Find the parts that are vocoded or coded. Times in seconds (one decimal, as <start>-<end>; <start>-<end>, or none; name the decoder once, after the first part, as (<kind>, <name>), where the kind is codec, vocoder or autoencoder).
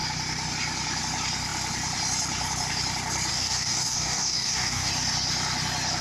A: 3.3-4.9 (codec, DAC)